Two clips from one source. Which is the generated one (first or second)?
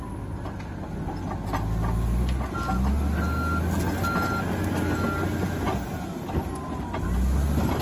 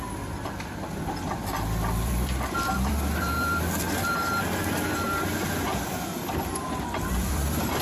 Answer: second